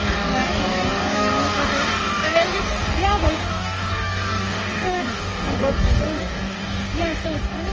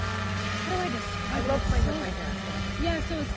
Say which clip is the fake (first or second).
first